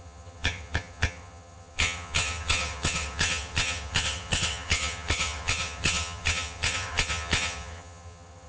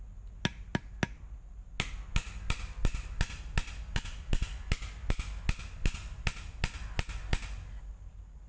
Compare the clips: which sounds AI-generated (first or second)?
first